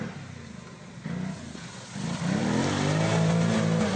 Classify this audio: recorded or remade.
recorded